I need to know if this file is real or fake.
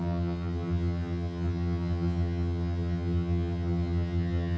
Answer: fake